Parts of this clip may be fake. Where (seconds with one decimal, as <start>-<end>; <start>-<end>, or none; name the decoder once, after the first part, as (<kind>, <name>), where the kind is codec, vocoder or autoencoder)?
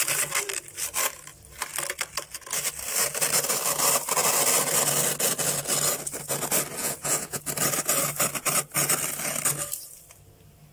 6.8-7.4 (vocoder, Vocos)